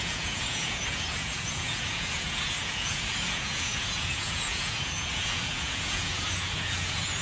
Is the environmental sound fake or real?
fake